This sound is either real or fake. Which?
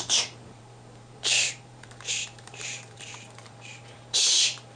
fake